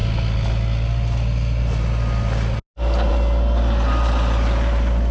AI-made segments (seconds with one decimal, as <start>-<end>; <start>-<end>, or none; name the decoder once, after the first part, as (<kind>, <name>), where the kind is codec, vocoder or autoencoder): none